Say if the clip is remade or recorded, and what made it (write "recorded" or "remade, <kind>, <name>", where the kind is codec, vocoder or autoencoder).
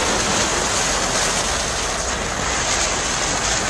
recorded